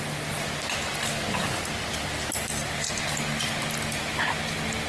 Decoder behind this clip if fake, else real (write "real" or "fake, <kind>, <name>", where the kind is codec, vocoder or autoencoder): real